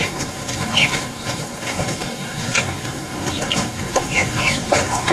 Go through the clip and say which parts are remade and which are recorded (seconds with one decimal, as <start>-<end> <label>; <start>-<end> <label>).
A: 0.0-5.1 remade